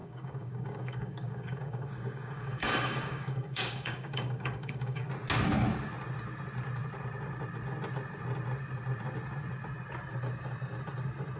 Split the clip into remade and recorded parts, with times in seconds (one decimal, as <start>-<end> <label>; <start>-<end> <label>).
0.0-5.1 remade; 5.1-11.4 recorded